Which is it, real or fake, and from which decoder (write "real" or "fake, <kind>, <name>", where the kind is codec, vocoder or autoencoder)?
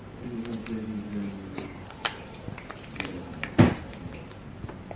fake, vocoder, BigVGAN v2